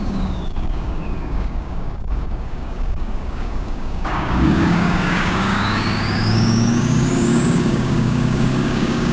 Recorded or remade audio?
remade